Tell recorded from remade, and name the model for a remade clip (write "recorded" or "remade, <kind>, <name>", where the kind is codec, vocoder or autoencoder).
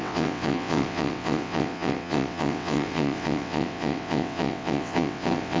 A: remade, vocoder, WaveNeXt